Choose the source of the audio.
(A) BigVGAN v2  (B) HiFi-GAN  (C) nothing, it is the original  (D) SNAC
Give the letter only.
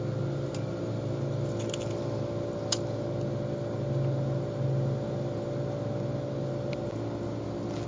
C